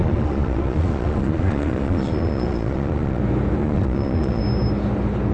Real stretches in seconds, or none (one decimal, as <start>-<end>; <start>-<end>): 3.2-3.6; 4.4-5.3